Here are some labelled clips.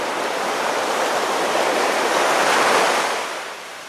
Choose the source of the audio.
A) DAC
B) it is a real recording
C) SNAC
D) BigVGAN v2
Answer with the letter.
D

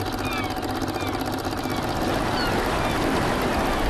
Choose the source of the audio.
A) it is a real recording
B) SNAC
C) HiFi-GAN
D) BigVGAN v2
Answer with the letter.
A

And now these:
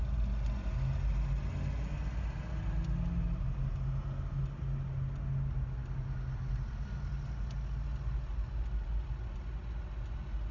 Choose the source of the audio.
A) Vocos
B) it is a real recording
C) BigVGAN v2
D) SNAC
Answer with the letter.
B